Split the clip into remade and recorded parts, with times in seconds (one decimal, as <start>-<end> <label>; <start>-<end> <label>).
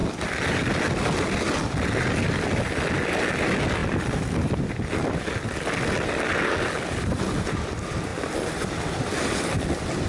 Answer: 0.0-10.1 recorded